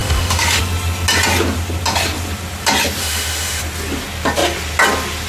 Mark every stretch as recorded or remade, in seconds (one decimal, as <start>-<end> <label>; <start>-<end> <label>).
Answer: 0.0-0.6 remade; 0.6-3.0 recorded; 3.0-3.6 remade; 3.6-5.3 recorded